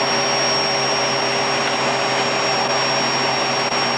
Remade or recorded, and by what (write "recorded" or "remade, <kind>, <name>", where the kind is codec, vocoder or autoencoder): recorded